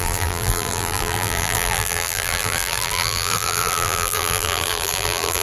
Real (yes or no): no